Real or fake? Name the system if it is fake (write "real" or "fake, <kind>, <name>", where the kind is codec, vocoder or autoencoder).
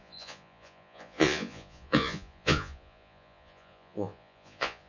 fake, vocoder, Vocos